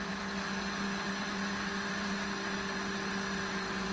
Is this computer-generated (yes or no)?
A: no